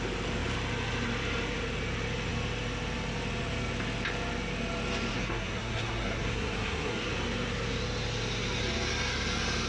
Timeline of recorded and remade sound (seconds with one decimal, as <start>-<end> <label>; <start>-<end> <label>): 0.0-5.1 recorded; 5.1-7.1 remade; 7.1-9.7 recorded